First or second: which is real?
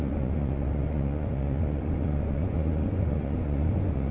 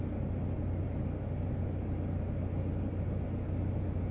second